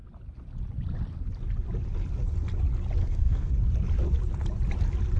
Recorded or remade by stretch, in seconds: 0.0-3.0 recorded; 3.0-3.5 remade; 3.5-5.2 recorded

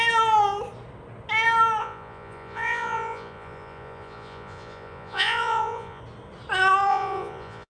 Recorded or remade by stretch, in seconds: 0.0-1.8 recorded; 1.8-6.0 remade; 6.0-6.9 recorded; 6.9-7.7 remade

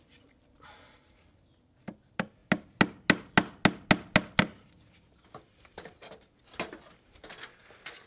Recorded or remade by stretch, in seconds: 0.0-8.1 recorded

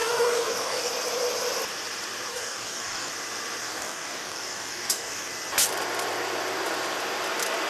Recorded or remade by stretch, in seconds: 0.0-0.9 remade; 0.9-2.3 recorded; 2.3-3.1 remade; 3.1-3.6 recorded; 3.6-5.3 remade; 5.3-7.7 recorded

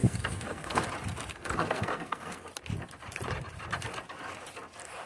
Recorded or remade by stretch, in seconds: 0.0-0.8 remade; 0.8-1.3 recorded; 1.3-2.5 remade; 2.5-5.1 recorded

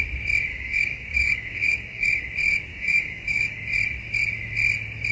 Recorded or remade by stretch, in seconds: 0.0-0.5 recorded; 0.5-2.2 remade; 2.2-2.7 recorded; 2.7-3.6 remade; 3.6-5.1 recorded

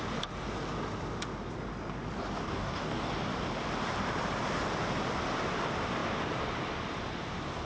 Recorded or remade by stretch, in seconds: 0.0-2.4 recorded; 2.4-3.1 remade; 3.1-7.7 recorded

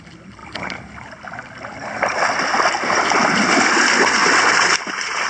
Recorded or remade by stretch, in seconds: 0.0-5.3 recorded